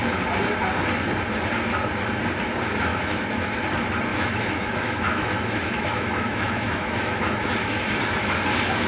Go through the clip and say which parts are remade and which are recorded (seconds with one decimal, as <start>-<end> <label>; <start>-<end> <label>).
0.0-2.9 recorded; 2.9-3.5 remade; 3.5-4.1 recorded; 4.1-7.8 remade; 7.8-8.9 recorded